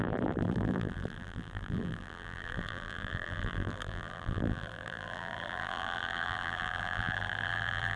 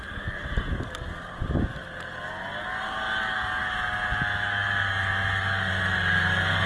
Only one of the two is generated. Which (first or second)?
first